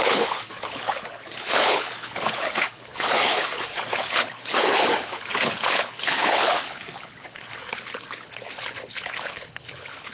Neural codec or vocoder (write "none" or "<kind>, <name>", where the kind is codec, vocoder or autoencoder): codec, HILCodec